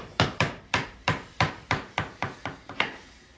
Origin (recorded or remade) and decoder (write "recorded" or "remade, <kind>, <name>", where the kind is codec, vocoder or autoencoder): remade, vocoder, BigVGAN v2